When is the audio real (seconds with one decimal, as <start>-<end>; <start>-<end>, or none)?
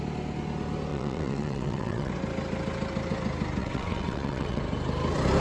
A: 0.0-0.9; 2.1-3.6; 4.6-5.4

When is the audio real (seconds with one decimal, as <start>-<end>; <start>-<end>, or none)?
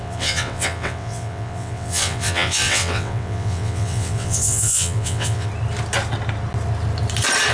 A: 5.5-7.5